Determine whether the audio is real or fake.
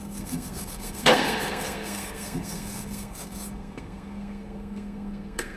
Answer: fake